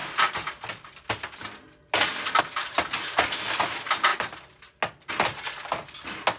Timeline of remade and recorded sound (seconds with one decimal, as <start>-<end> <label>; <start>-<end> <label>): 0.0-6.4 recorded